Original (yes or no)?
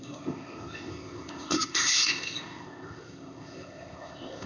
no